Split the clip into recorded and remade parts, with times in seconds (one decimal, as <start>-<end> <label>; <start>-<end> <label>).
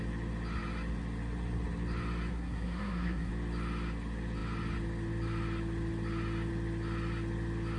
0.0-2.3 recorded; 2.3-3.3 remade; 3.3-7.8 recorded